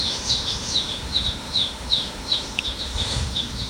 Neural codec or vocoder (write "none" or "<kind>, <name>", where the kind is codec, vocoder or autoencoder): autoencoder, DAC-VAE